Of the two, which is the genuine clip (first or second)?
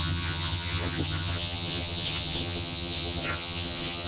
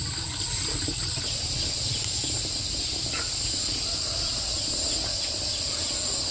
second